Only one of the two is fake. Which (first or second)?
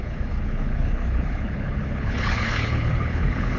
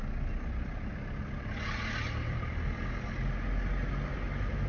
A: first